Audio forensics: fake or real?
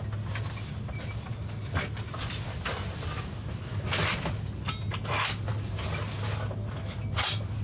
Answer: real